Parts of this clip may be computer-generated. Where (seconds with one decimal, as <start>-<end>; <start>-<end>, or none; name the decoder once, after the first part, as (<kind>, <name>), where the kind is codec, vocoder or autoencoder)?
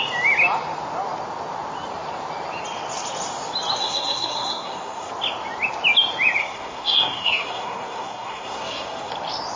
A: 3.8-5.1 (codec, SNAC); 6.4-9.1